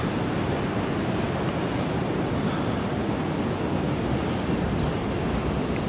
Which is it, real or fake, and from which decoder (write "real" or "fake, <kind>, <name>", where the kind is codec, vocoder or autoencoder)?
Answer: real